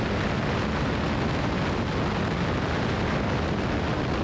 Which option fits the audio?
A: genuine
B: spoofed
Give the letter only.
A